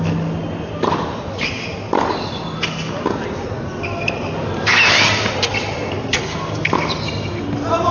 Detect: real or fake real